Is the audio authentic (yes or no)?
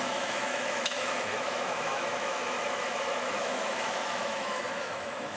no